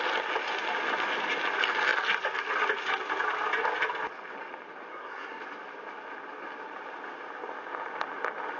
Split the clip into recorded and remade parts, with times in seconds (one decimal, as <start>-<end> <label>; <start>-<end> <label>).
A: 0.0-4.9 recorded; 4.9-5.4 remade; 5.4-8.6 recorded